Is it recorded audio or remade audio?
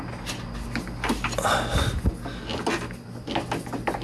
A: recorded